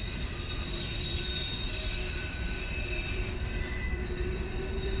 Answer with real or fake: fake